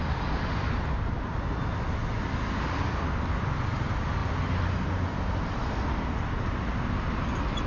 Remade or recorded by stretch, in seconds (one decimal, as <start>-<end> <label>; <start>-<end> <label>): 0.0-7.7 recorded